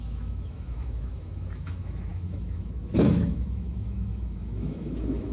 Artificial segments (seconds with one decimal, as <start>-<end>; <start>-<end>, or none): 0.0-5.3